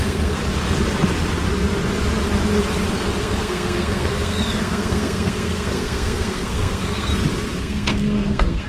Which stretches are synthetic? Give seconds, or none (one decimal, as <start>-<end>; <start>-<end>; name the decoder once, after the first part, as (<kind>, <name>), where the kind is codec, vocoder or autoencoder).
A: 0.0-0.4 (codec, SNAC); 3.2-7.1; 7.6-8.7